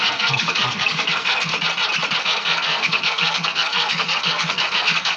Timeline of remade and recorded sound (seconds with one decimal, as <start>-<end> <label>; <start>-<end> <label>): 0.0-1.5 remade; 1.5-2.2 recorded; 2.2-5.2 remade